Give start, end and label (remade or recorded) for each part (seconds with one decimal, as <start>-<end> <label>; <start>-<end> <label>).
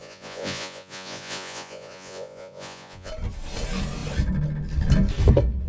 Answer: 0.0-3.1 remade; 3.1-5.7 recorded